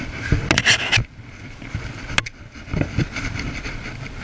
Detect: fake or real real